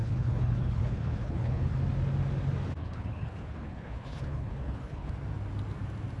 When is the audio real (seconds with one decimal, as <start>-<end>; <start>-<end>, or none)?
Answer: 1.7-2.8; 5.1-6.2